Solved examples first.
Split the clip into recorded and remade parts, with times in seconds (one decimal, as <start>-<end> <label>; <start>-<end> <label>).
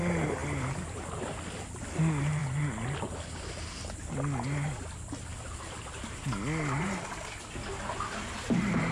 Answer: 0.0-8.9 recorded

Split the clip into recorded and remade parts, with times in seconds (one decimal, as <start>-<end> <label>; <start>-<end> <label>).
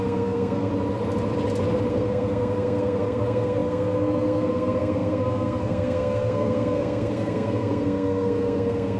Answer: 0.0-0.7 remade; 0.7-1.9 recorded; 1.9-9.0 remade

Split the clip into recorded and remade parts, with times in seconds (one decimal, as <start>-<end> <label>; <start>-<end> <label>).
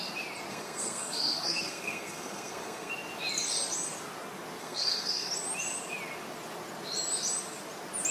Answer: 0.0-0.5 recorded; 0.5-2.9 remade; 2.9-4.6 recorded; 4.6-5.3 remade; 5.3-8.1 recorded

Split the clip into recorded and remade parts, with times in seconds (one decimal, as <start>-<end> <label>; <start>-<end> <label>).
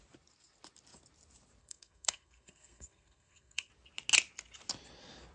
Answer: 0.0-1.6 recorded; 1.6-3.7 remade; 3.7-5.3 recorded